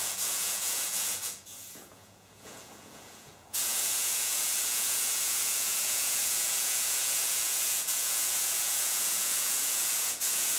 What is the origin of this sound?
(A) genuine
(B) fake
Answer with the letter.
B